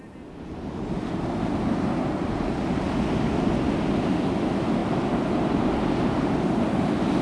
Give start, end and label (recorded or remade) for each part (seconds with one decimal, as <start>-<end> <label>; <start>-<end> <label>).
0.0-7.2 recorded